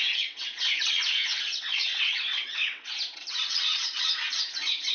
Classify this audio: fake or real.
fake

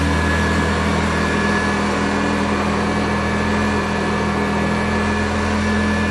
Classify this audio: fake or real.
real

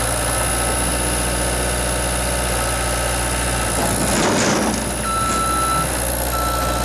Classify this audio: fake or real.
real